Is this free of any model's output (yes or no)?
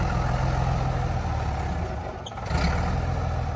yes